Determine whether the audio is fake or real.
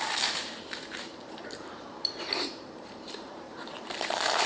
fake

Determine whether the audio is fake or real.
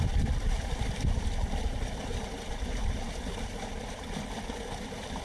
real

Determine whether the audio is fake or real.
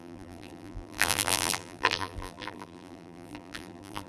fake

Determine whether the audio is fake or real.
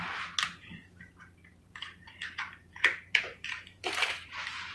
fake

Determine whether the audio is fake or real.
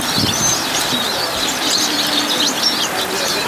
real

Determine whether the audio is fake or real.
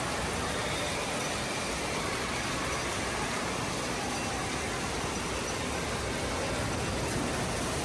real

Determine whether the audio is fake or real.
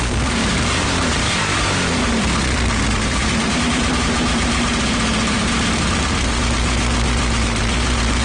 fake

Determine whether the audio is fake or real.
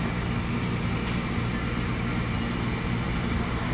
real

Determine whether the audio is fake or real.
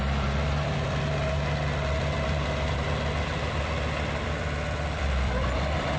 fake